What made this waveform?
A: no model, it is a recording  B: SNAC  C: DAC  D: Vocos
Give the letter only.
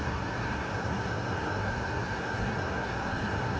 B